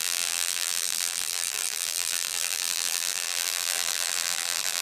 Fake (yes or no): yes